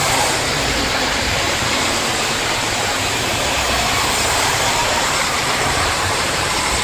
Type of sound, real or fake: fake